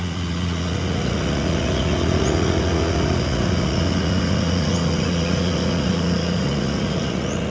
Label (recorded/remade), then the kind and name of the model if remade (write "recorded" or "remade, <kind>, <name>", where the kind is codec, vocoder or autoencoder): remade, vocoder, Vocos